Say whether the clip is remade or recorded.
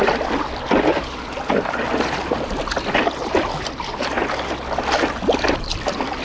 recorded